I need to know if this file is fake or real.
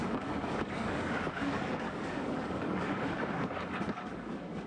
fake